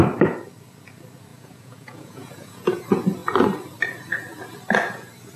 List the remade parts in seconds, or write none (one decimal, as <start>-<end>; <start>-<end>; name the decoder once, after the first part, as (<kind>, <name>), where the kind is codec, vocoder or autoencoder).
1.3-2.8 (vocoder, Vocos)